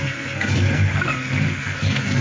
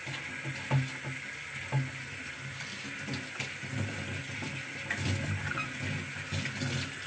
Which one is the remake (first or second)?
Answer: first